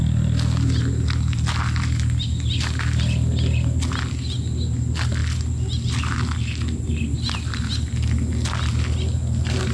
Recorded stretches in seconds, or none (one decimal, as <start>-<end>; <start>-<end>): 0.0-9.7